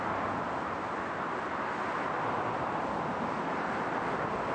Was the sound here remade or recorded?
recorded